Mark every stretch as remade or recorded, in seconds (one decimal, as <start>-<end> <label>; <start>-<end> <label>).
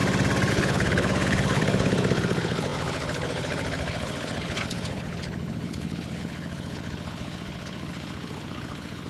0.0-0.5 recorded; 0.5-9.1 remade